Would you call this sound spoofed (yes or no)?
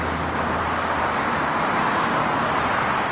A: no